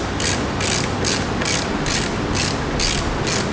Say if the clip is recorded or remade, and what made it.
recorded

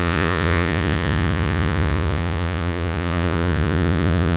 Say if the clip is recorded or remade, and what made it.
remade, vocoder, Vocos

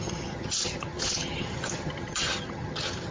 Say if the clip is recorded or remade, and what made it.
remade, vocoder, HiFi-GAN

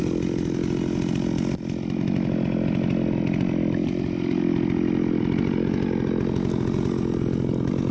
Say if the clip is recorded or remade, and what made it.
recorded